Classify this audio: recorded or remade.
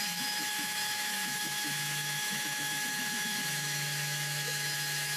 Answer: remade